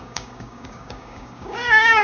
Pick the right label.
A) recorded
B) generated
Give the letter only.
B